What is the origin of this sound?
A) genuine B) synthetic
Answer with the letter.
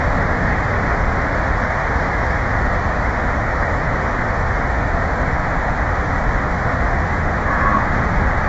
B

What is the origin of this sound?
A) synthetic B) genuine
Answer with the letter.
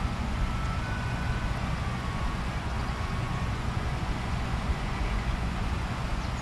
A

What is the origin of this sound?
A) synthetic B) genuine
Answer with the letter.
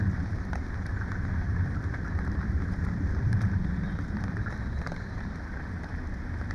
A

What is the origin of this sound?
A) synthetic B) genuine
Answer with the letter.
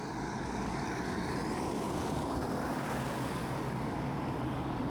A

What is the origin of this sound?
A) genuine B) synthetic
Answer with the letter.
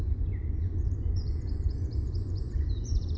B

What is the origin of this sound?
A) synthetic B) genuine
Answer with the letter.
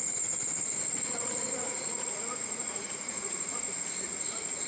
A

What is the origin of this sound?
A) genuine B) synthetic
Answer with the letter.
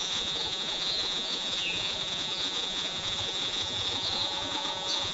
B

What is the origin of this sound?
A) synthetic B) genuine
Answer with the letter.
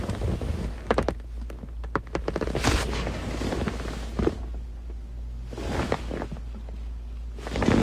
B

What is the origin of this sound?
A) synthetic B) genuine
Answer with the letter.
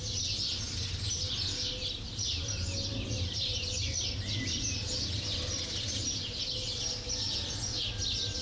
B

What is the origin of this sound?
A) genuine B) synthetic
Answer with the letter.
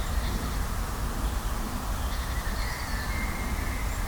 A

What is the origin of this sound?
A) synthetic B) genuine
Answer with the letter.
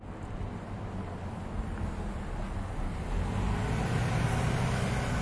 B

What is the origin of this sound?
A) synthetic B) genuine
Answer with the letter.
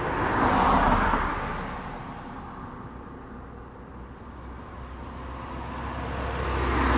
B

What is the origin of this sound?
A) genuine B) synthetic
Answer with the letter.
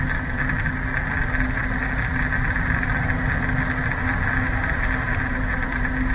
A